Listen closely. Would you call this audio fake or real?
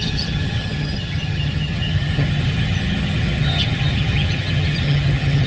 fake